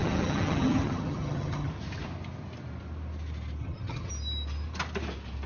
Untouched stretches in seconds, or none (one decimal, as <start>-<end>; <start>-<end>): 1.7-3.6; 4.1-5.5